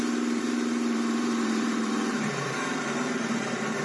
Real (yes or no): no